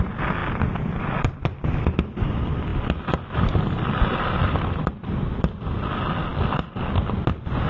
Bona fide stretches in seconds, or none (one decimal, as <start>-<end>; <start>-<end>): 0.0-2.7; 4.8-6.3; 6.9-7.7